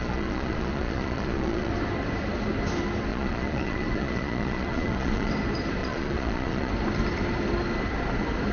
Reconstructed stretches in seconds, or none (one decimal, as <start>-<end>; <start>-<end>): 0.0-1.7; 3.1-5.3; 5.8-6.7